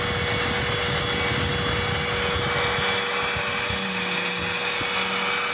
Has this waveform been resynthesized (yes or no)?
no